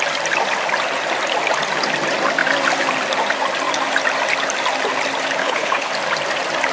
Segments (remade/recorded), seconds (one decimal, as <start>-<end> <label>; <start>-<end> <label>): 0.0-5.4 recorded; 5.4-5.9 remade; 5.9-6.7 recorded

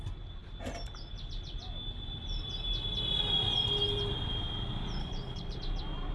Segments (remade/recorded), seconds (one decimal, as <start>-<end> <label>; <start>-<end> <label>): 0.0-5.0 recorded; 5.0-5.6 remade; 5.6-6.1 recorded